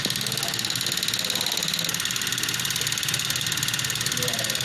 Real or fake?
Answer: real